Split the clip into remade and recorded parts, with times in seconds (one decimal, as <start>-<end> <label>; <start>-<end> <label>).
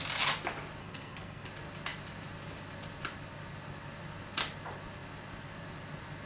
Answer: 0.0-0.8 recorded; 0.8-1.5 remade; 1.5-6.3 recorded